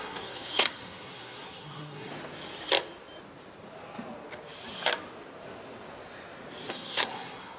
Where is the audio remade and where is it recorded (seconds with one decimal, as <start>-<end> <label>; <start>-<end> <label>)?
0.0-2.1 remade; 2.1-6.7 recorded; 6.7-7.6 remade